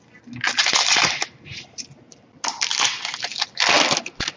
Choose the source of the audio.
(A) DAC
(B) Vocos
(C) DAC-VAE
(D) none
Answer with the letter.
D